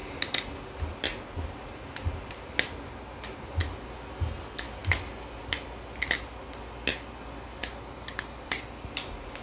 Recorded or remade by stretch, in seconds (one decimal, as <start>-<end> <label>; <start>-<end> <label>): 0.0-9.4 recorded